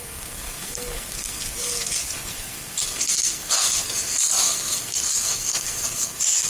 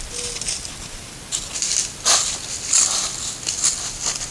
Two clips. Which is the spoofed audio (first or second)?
first